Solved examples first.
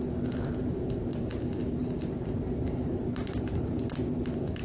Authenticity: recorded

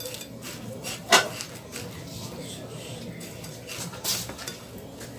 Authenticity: recorded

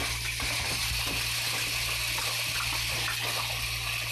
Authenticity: recorded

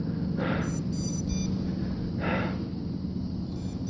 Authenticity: recorded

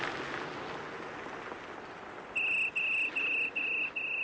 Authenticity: recorded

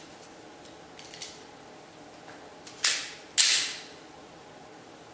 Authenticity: recorded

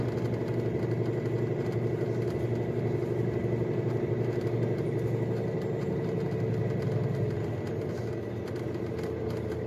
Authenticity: recorded